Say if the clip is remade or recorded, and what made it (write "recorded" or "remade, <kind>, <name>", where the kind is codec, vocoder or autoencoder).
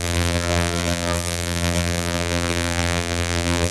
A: remade, vocoder, BigVGAN v2